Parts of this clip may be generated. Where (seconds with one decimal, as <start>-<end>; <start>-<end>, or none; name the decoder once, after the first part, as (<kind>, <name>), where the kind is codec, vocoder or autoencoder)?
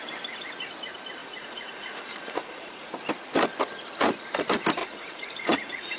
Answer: 1.2-2.9 (vocoder, Vocos); 4.8-6.0